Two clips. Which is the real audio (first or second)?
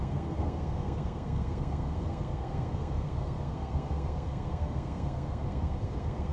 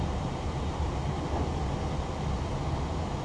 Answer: second